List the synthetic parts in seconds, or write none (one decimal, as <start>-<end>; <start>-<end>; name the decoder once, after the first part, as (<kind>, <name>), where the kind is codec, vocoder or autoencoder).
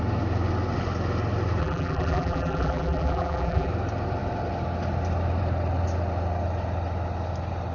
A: 1.6-3.7 (vocoder, BigVGAN v2)